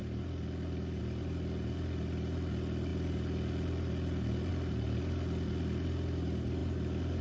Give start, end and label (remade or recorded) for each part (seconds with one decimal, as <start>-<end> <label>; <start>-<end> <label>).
0.0-7.2 recorded